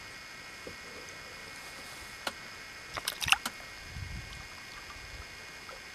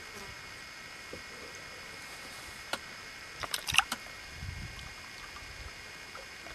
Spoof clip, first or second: second